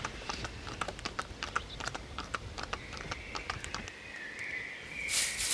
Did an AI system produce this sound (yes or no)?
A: no